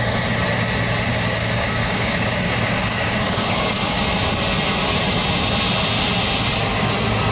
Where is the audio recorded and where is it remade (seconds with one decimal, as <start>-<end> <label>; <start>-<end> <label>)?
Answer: 0.0-1.1 recorded; 1.1-4.0 remade; 4.0-7.3 recorded